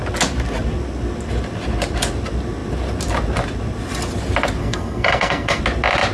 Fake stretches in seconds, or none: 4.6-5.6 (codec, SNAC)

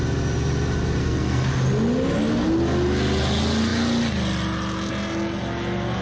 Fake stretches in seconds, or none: 1.0-1.5 (codec, SNAC)

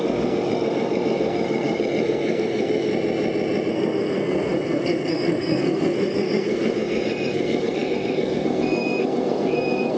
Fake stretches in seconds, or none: 0.0-2.9 (codec, SNAC); 3.7-10.0